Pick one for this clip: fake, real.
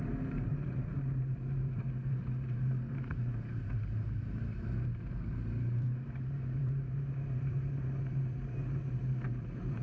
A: fake